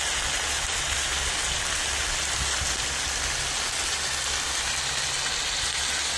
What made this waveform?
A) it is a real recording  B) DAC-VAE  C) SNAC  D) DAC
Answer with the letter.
A